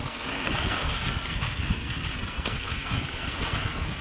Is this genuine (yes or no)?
no